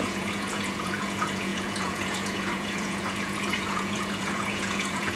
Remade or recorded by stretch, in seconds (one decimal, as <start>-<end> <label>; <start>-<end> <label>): 0.0-5.2 remade